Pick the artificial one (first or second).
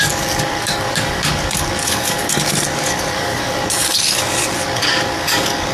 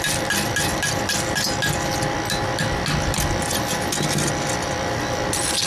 first